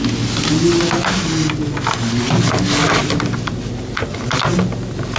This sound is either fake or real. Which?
real